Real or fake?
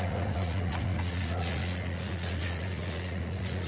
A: fake